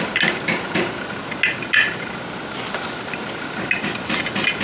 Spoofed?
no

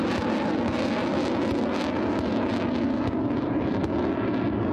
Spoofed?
no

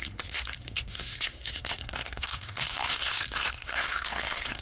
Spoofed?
yes